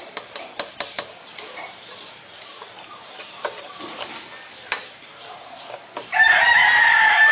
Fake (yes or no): yes